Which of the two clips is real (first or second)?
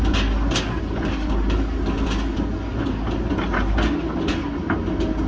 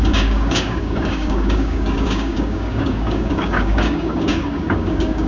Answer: first